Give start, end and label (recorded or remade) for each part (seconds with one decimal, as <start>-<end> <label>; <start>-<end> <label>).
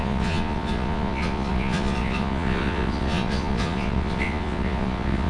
0.0-5.3 remade